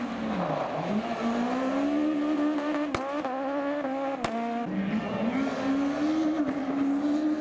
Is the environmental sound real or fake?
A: real